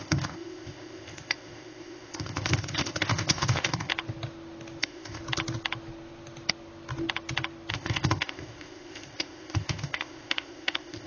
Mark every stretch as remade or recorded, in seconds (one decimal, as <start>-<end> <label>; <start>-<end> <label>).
0.0-3.9 remade; 3.9-4.8 recorded; 4.8-5.2 remade; 5.2-7.7 recorded; 7.7-11.1 remade